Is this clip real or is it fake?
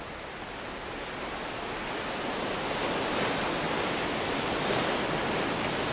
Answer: real